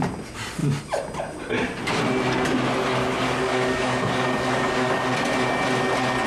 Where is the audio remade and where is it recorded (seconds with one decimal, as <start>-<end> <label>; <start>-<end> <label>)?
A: 0.0-3.0 recorded; 3.0-5.1 remade; 5.1-6.3 recorded